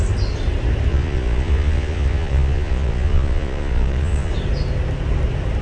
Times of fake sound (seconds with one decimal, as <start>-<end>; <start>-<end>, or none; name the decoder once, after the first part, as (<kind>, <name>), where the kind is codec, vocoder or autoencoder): 0.9-4.3 (vocoder, Vocos)